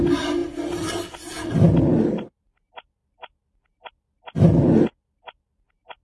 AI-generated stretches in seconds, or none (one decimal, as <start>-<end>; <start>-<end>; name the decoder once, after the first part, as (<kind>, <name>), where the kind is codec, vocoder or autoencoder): none